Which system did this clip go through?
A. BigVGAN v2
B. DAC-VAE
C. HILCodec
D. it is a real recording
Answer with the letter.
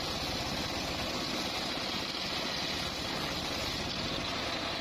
D